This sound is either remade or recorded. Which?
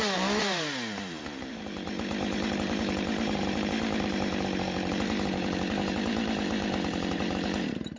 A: remade